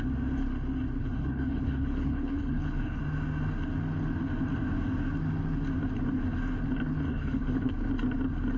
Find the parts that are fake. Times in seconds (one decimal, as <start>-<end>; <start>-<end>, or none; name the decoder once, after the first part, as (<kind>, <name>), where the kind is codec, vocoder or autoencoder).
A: 1.0-3.0 (codec, HILCodec); 7.1-7.7